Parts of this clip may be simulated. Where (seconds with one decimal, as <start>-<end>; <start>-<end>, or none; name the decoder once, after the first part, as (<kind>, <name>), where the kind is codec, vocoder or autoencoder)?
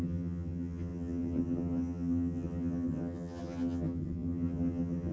0.0-5.1 (vocoder, HiFi-GAN)